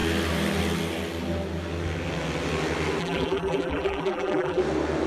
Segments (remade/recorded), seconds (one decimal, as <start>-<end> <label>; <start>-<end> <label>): 0.0-3.0 recorded; 3.0-4.6 remade; 4.6-5.1 recorded